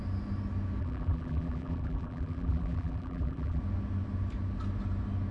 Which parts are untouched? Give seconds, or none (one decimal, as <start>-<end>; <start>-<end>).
0.0-0.8; 3.6-5.3

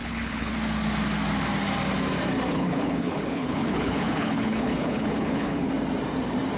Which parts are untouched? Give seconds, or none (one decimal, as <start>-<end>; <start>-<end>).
0.5-2.5; 5.7-6.6

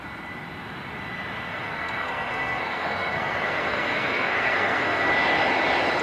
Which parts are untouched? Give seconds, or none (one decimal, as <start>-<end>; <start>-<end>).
0.0-1.5; 5.1-6.0

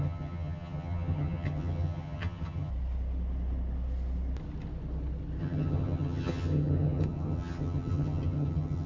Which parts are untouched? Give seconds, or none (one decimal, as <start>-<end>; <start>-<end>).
2.7-5.4

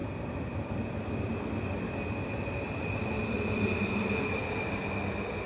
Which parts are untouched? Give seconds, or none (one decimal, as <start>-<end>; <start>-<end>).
0.0-5.5

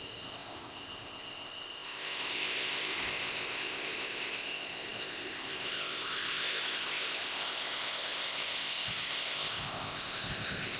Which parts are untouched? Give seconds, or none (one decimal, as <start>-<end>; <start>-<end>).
none

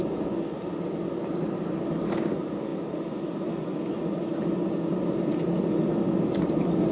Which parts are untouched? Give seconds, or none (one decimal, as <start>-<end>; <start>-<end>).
0.0-6.9